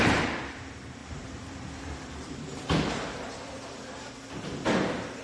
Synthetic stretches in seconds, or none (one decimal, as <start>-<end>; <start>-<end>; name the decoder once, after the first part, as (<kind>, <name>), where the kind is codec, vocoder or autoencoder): 1.0-4.1 (vocoder, BigVGAN v2)

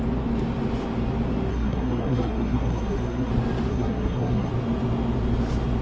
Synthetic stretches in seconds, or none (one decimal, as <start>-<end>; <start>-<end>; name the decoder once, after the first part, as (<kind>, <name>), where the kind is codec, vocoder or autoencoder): 1.5-3.3 (codec, SNAC); 3.7-4.5

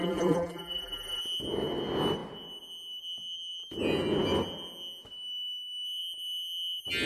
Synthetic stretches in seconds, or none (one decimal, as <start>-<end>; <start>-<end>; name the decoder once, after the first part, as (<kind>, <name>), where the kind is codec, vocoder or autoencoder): 0.0-1.2 (vocoder, BigVGAN v2)

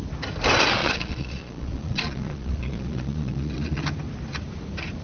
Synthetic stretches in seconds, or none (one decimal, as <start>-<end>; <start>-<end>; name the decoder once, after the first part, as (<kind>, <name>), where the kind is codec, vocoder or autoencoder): 0.8-3.8 (vocoder, Vocos)

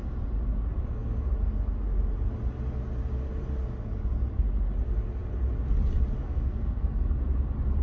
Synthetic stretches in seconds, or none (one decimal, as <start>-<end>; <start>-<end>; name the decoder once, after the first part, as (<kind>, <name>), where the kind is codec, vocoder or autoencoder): 6.2-7.0 (codec, SNAC)